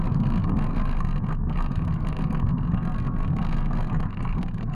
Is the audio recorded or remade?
remade